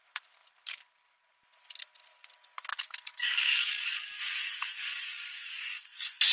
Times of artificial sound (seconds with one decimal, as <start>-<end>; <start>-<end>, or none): 2.7-6.3